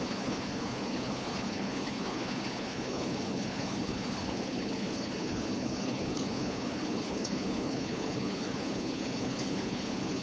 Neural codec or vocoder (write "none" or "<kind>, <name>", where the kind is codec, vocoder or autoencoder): codec, HILCodec